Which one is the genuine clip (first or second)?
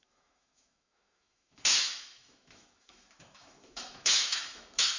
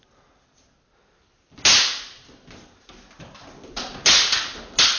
second